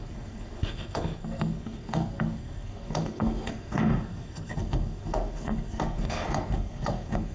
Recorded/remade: remade